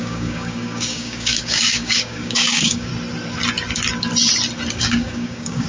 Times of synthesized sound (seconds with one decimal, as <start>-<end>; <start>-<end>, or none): 0.0-2.9; 4.7-5.7